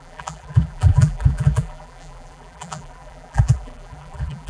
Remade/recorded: remade